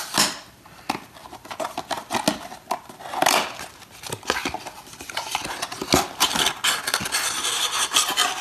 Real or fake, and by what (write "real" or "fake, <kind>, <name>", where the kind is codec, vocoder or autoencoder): real